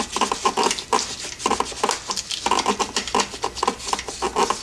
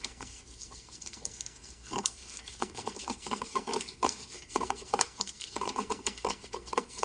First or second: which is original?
first